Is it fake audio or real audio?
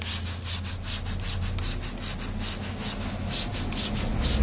real